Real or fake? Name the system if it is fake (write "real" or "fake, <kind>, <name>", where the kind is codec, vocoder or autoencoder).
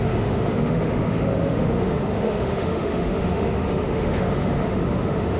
fake, autoencoder, DAC-VAE